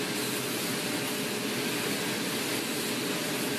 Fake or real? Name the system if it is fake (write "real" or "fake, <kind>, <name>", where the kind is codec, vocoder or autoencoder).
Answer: real